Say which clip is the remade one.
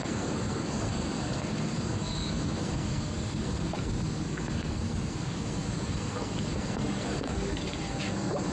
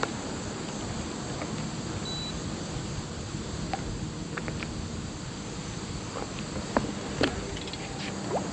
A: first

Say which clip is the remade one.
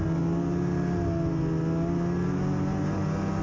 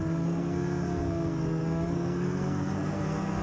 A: second